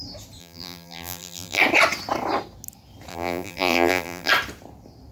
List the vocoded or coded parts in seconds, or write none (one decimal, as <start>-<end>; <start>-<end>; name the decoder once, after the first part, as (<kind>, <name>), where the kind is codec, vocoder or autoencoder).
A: 0.4-1.6 (vocoder, BigVGAN v2); 3.1-4.3

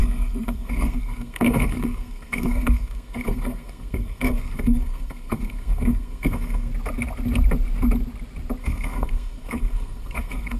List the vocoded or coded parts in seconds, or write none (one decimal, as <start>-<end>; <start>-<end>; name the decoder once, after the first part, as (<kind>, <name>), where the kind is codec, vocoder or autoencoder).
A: 0.0-6.7 (codec, SNAC); 8.6-10.6

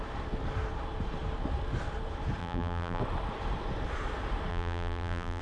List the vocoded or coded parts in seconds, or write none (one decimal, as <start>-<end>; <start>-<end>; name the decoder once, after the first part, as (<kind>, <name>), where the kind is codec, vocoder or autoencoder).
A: 2.4-3.0 (vocoder, BigVGAN v2); 4.5-5.4